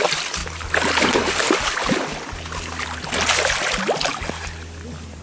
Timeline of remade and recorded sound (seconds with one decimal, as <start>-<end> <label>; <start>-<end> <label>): 0.0-5.2 recorded